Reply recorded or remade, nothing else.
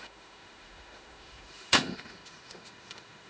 remade